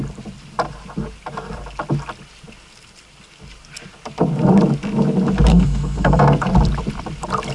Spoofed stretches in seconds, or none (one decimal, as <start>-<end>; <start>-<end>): 5.5-6.2